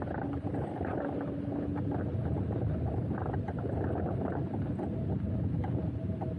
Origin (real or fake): real